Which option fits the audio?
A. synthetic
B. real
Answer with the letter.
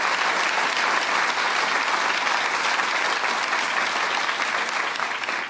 B